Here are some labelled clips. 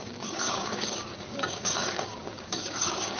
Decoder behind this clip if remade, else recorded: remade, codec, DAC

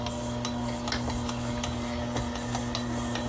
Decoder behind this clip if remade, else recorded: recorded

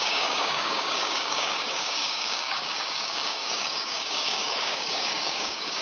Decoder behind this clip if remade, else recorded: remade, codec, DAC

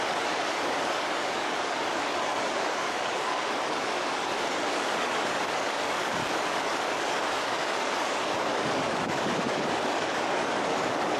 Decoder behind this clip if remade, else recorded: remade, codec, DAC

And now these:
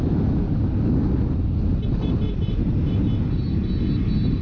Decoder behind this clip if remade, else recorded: recorded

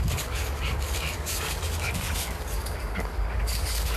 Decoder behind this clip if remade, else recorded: remade, codec, DAC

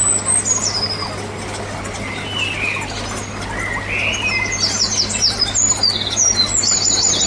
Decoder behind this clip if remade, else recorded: recorded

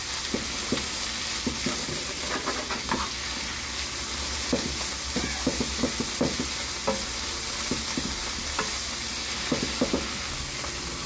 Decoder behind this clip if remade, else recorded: recorded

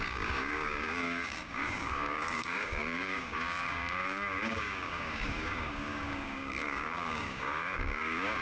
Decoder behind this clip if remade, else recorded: remade, codec, DAC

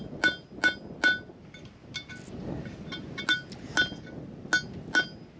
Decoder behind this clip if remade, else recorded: recorded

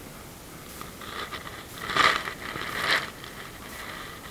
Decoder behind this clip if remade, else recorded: recorded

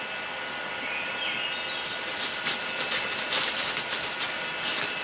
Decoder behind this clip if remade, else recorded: recorded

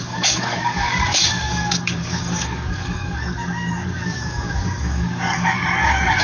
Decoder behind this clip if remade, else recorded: remade, codec, DAC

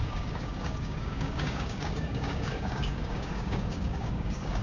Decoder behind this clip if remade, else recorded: remade, codec, DAC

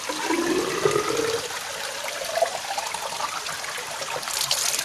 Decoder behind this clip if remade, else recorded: recorded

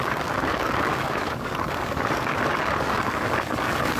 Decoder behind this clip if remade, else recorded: remade, codec, DAC